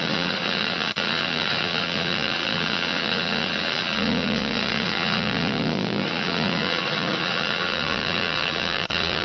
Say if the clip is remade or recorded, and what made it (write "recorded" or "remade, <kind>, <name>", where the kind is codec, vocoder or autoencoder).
remade, vocoder, Vocos